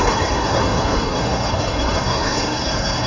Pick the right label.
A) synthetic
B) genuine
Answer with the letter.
A